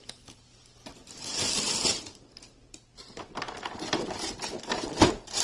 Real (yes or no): no